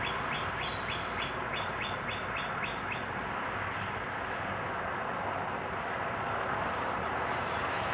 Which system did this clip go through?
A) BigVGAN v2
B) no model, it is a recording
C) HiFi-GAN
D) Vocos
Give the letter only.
B